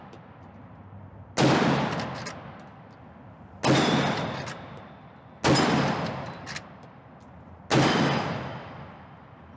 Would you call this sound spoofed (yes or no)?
no